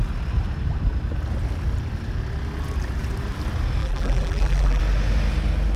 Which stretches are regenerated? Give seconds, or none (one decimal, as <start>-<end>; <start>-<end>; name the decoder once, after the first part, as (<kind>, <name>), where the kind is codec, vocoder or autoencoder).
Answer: 3.8-4.8 (vocoder, BigVGAN v2)